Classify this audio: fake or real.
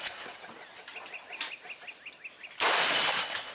real